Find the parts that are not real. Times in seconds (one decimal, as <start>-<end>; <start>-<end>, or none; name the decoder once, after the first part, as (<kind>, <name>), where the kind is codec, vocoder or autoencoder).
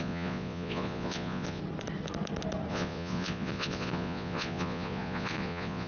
0.0-1.6 (vocoder, Vocos); 2.7-5.9